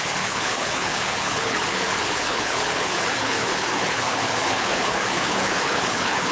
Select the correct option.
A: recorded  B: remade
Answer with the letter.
B